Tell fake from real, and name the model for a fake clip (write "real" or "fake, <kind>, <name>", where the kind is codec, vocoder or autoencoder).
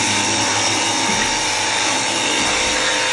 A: real